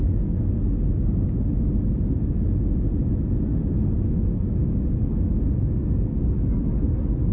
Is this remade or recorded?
recorded